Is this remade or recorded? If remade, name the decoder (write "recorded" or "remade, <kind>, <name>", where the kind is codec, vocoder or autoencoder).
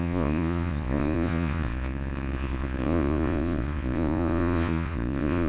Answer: remade, vocoder, Vocos